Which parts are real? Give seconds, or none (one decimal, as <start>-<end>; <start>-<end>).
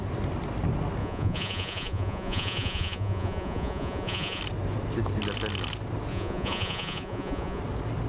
0.0-1.0; 4.4-6.1; 7.6-8.1